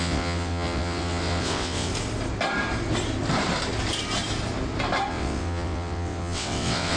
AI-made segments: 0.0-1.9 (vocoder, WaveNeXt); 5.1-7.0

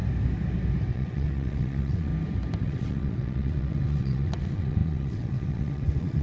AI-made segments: 0.9-2.1 (vocoder, WaveNeXt); 2.6-6.2

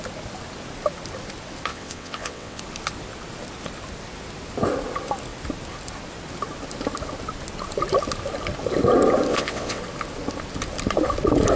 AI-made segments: 1.7-2.6 (vocoder, WaveNeXt); 9.3-9.8

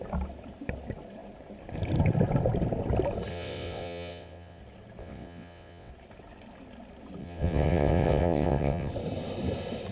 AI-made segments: 3.3-4.6 (vocoder, WaveNeXt); 5.0-5.9; 7.2-8.9

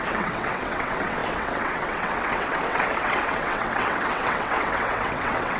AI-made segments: 0.0-5.6 (vocoder, WaveNeXt)

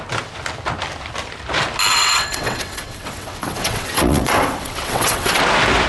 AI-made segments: 1.9-5.4 (vocoder, WaveNeXt)

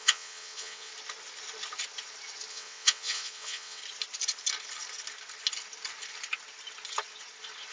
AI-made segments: 0.0-0.9 (vocoder, WaveNeXt); 2.5-3.8